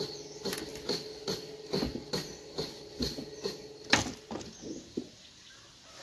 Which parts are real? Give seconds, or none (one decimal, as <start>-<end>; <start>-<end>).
0.0-6.0